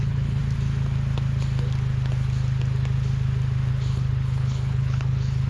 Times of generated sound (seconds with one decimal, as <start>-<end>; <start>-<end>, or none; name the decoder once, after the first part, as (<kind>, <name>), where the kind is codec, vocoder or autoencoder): 0.0-0.4 (codec, HILCodec); 3.7-5.5